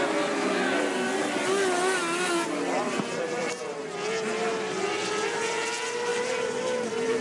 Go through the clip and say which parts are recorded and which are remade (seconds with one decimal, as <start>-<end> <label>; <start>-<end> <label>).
0.0-6.1 recorded; 6.1-6.6 remade; 6.6-7.2 recorded